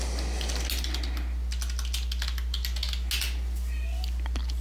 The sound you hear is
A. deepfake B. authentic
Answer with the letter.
B